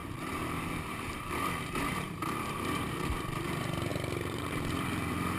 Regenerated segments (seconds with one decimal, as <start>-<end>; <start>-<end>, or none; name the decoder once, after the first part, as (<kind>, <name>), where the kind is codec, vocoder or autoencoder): 0.0-3.1 (vocoder, BigVGAN v2)